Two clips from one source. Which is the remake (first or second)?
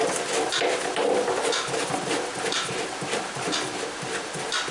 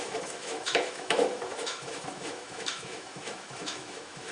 second